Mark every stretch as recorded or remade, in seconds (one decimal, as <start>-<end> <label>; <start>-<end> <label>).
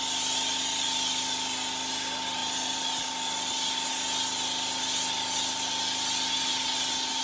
0.0-7.2 recorded